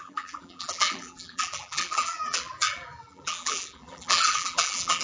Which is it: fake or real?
fake